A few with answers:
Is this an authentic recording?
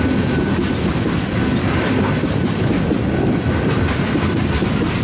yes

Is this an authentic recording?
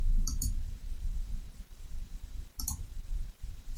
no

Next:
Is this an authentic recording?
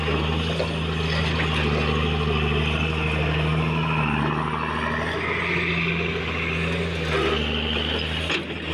yes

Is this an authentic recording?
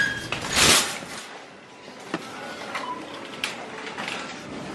yes